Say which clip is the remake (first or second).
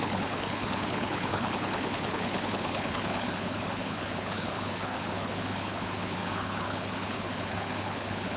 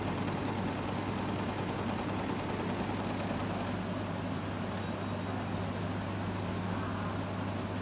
first